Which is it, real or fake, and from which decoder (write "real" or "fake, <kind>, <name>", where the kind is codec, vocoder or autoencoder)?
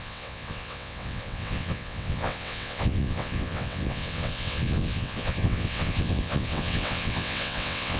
fake, vocoder, WaveNeXt